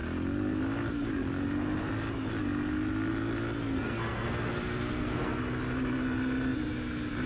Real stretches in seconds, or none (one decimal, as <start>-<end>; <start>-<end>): 0.0-3.6; 5.4-7.3